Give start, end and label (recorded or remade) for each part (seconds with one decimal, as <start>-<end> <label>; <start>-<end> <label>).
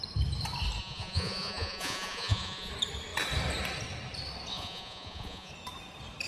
0.0-0.8 recorded; 0.8-2.7 remade; 2.7-4.5 recorded; 4.5-5.5 remade; 5.5-6.3 recorded